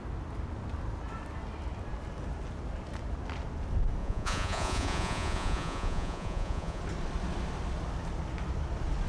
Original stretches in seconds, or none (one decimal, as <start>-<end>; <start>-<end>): 0.0-4.0; 6.8-9.1